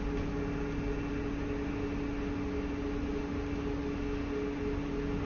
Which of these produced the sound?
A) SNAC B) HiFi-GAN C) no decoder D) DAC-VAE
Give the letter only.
C